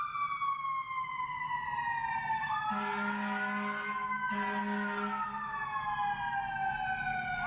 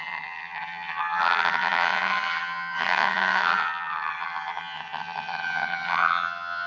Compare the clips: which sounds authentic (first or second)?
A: first